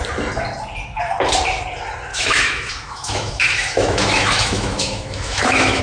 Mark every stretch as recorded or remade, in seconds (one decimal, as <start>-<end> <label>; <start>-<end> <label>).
0.0-2.1 recorded; 2.1-5.8 remade